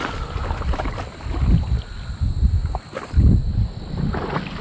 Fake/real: real